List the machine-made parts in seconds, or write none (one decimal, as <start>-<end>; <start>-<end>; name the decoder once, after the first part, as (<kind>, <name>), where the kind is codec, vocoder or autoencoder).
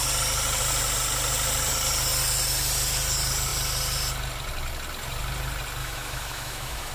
5.8-6.9 (autoencoder, DAC-VAE)